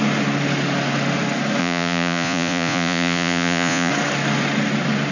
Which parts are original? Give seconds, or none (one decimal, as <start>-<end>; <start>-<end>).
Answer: 0.0-1.6; 3.9-5.1